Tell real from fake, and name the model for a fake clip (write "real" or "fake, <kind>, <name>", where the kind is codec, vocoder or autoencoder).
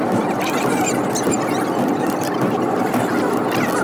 real